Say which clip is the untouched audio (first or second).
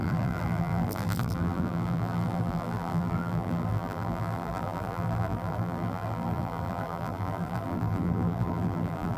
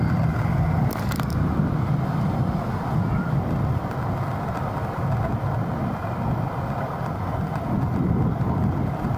second